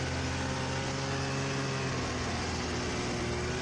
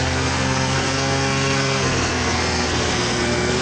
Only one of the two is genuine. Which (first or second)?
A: first